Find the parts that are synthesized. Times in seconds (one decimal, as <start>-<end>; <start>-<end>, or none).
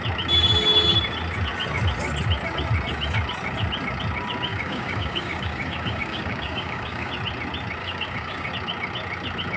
4.5-7.1; 7.8-8.5